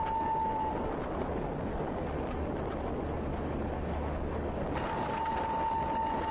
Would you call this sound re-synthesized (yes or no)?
no